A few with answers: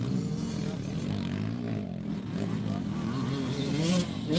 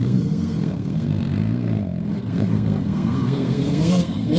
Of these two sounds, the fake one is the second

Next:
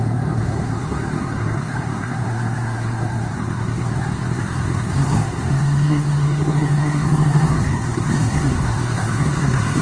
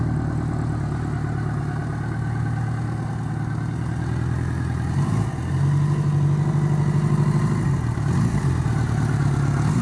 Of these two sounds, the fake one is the first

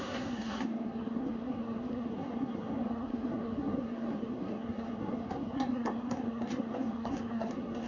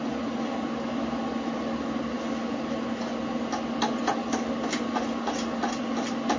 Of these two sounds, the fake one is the first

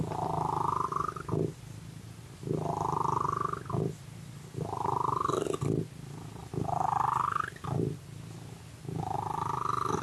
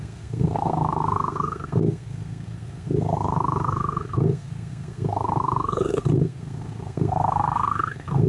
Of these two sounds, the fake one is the second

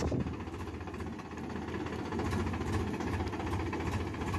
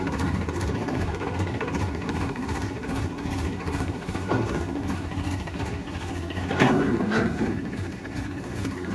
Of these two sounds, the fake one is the second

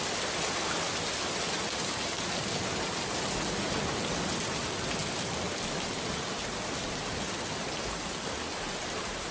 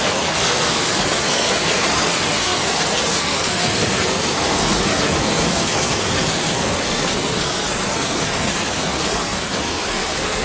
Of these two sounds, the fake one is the second